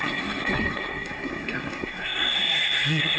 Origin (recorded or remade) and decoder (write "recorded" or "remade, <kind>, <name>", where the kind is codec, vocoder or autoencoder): remade, codec, SNAC